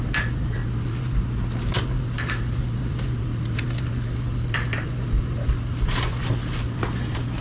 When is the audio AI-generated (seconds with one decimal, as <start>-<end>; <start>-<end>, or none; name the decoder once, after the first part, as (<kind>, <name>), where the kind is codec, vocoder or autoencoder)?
none